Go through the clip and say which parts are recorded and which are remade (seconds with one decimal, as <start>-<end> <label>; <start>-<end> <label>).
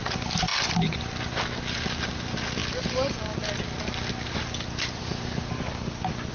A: 0.0-0.5 recorded; 0.5-1.1 remade; 1.1-6.3 recorded